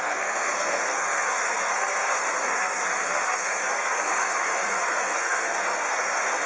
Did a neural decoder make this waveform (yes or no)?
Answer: yes